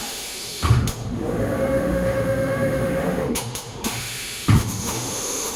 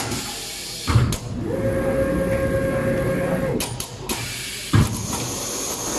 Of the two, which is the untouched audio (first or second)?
second